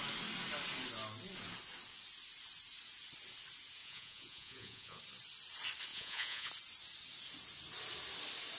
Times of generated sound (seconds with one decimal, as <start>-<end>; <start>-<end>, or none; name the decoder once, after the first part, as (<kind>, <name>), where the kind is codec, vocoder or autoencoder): 3.8-5.0 (vocoder, Vocos); 5.9-6.5